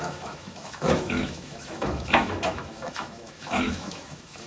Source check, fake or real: fake